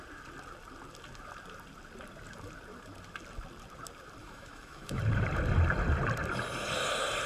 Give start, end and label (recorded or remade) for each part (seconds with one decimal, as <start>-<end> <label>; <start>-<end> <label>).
0.0-4.2 recorded; 4.2-5.0 remade; 5.0-7.3 recorded